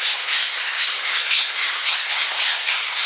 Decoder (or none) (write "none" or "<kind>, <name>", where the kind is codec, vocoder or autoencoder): codec, SNAC